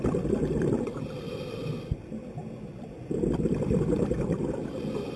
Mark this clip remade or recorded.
recorded